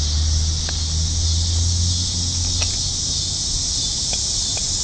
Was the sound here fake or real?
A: real